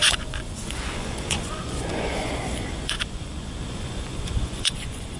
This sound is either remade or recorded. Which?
remade